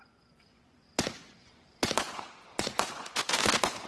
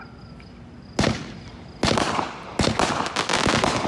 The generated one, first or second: first